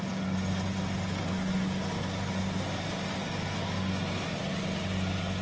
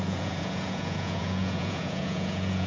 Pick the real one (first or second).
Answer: first